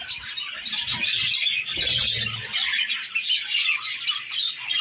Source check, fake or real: real